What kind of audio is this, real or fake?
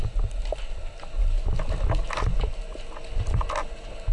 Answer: real